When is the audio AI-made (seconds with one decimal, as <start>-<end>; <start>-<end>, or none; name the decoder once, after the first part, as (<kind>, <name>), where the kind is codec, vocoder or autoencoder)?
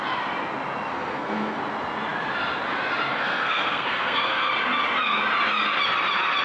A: 0.9-1.6 (codec, SNAC); 3.1-4.5